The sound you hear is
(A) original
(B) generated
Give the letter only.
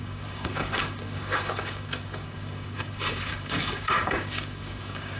B